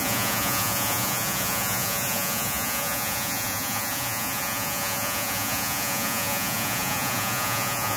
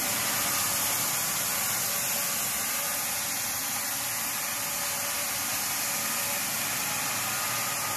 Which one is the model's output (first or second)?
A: first